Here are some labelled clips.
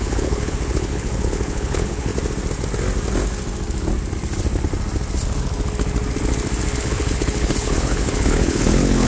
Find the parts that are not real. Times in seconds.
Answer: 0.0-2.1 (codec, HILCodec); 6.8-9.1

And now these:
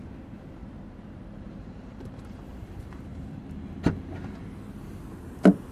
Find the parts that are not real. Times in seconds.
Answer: 0.6-3.6 (vocoder, BigVGAN v2)

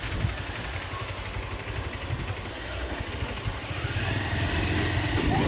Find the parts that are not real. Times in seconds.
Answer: 2.5-3.1 (codec, SNAC)